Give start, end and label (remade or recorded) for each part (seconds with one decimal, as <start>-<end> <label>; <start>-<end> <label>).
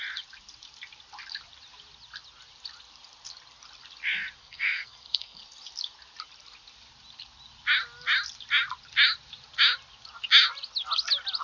0.0-4.4 recorded; 4.4-5.4 remade; 5.4-11.4 recorded